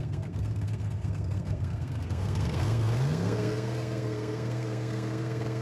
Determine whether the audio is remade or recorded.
remade